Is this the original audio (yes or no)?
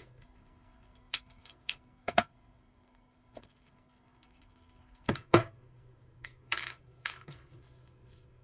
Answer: no